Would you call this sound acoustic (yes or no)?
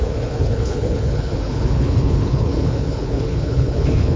no